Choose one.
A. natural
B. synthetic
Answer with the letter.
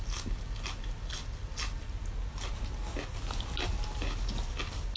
A